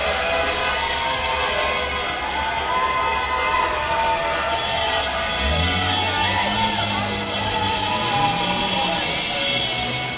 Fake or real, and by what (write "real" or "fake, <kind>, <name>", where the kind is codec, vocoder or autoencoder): real